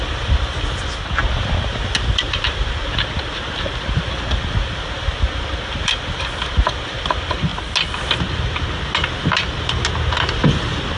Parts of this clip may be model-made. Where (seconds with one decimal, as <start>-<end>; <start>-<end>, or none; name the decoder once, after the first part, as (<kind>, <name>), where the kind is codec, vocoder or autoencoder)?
none